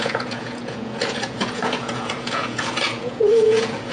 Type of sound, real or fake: fake